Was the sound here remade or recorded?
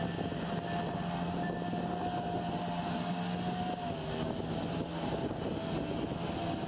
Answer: recorded